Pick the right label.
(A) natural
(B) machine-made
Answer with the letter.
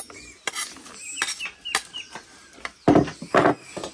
A